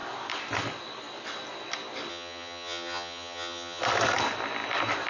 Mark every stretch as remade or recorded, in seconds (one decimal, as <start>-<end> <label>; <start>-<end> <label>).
0.0-2.1 recorded; 2.1-3.8 remade; 3.8-5.1 recorded